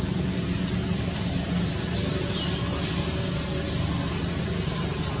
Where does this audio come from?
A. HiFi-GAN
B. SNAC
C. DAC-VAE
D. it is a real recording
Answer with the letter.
D